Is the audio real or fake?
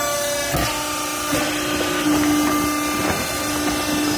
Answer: real